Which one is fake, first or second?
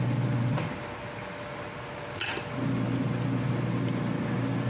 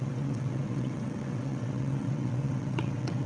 second